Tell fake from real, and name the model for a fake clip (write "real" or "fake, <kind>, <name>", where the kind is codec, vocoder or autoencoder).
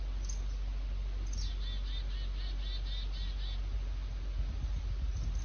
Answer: real